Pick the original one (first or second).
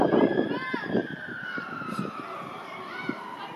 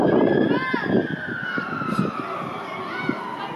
second